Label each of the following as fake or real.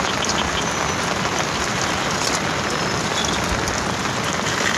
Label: real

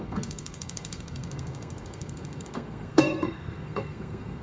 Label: fake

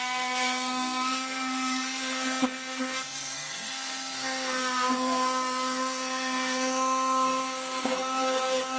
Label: fake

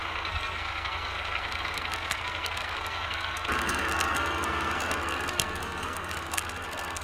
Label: fake